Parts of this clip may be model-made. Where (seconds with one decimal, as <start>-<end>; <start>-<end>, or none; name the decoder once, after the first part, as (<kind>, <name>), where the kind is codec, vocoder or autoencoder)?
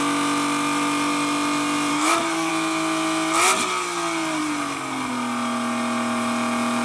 1.9-2.5 (codec, DAC)